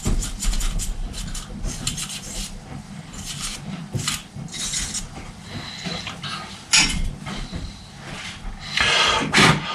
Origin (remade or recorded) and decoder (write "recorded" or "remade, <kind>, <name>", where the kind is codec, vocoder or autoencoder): recorded